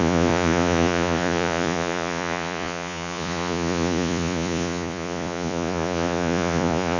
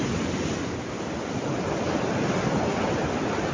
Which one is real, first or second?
second